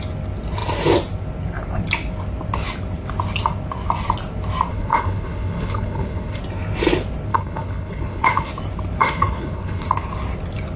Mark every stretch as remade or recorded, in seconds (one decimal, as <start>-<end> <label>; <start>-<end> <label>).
0.0-4.7 recorded; 4.7-6.4 remade; 6.4-7.3 recorded; 7.3-8.5 remade; 8.5-9.0 recorded; 9.0-9.9 remade; 9.9-10.8 recorded